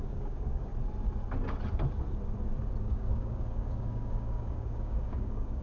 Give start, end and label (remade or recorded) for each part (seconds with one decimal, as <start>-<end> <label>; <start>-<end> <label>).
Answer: 0.0-0.7 remade; 0.7-2.8 recorded; 2.8-5.6 remade